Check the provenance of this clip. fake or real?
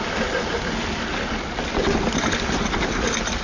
real